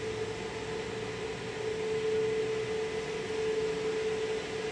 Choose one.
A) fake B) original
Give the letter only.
B